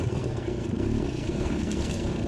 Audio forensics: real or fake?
fake